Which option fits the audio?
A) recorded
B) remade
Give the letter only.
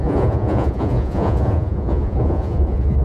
B